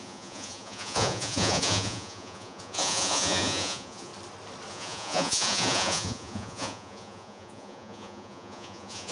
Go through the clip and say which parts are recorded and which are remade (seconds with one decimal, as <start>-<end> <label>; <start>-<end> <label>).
0.0-4.1 remade; 4.1-4.7 recorded; 4.7-9.1 remade